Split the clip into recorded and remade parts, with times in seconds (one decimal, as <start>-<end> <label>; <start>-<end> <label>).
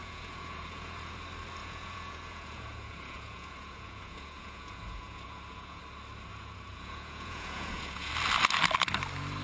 0.0-1.1 remade; 1.1-1.6 recorded; 1.6-5.8 remade; 5.8-6.3 recorded; 6.3-8.1 remade; 8.1-9.4 recorded